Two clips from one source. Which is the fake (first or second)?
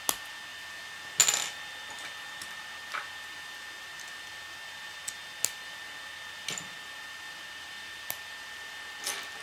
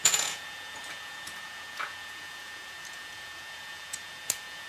second